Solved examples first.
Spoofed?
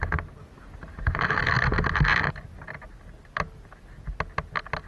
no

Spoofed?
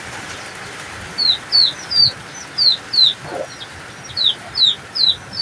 no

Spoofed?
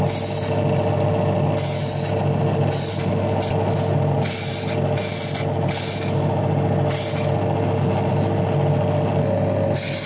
no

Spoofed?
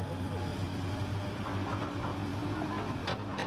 no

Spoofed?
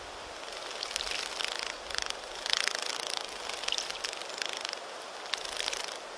no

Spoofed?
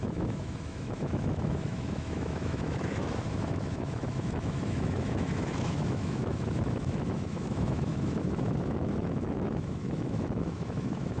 yes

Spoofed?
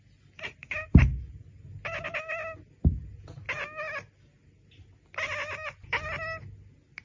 no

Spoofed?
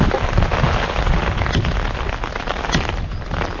no